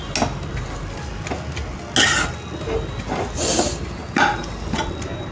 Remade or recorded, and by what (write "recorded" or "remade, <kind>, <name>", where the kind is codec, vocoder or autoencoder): recorded